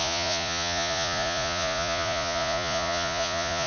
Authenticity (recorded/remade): remade